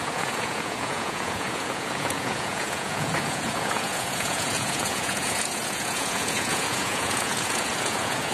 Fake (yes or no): yes